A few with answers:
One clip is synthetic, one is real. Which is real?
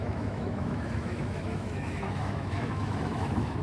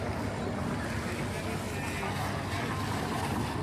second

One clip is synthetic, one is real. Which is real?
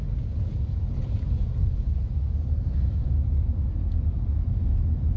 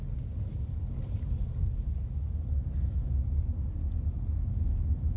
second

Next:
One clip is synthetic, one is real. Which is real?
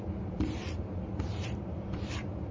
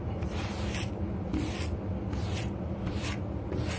second